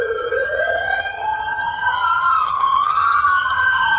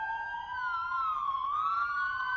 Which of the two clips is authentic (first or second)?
second